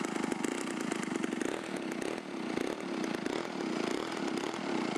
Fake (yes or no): no